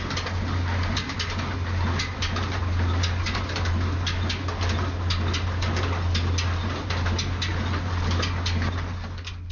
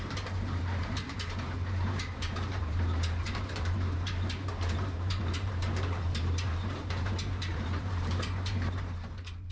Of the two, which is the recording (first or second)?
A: first